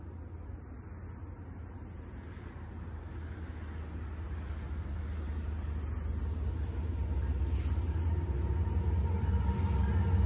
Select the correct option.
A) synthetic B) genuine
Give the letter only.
B